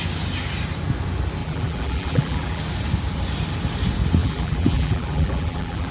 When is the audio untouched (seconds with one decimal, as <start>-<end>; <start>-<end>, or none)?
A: 0.0-1.4; 2.6-4.2